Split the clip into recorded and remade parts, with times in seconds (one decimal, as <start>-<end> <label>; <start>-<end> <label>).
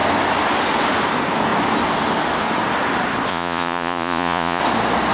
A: 0.0-3.3 recorded; 3.3-4.6 remade; 4.6-5.1 recorded